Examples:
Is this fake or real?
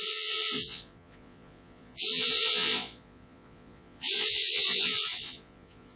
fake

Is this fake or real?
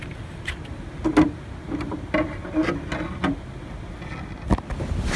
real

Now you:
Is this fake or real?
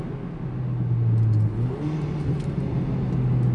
real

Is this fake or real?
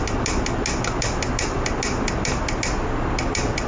real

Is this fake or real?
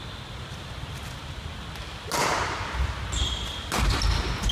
real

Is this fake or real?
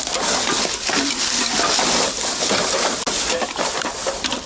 real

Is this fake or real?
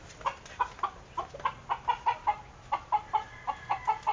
real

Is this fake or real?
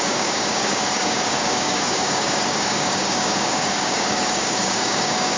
fake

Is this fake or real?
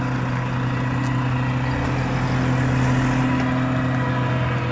real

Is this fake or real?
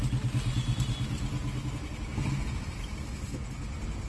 real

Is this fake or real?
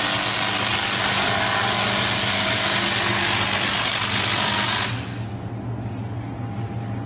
real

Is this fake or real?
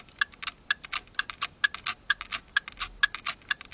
real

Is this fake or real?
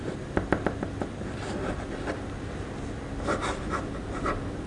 real